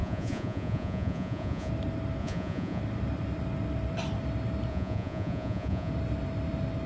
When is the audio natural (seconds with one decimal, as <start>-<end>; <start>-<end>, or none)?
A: 1.7-2.2; 2.8-4.7; 5.9-6.9